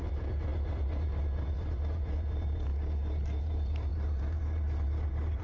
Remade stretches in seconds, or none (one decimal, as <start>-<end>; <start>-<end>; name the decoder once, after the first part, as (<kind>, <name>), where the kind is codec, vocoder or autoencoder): 0.0-2.7 (vocoder, BigVGAN v2); 3.4-5.4